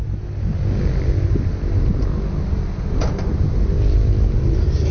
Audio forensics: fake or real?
real